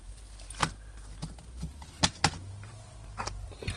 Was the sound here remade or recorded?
recorded